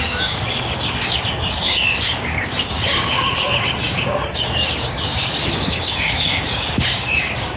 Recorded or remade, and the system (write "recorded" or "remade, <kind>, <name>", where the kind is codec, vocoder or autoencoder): remade, codec, DAC